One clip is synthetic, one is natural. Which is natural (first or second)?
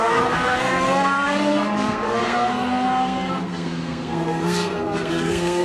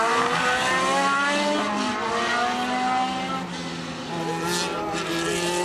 second